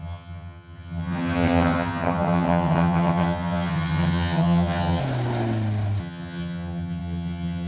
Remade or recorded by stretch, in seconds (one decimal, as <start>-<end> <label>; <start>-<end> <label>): 0.0-5.0 remade; 5.0-6.0 recorded; 6.0-7.7 remade